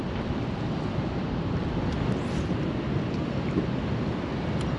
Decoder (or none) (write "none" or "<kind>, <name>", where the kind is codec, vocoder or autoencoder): none